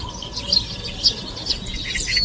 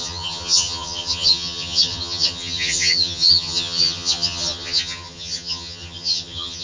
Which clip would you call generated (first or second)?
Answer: second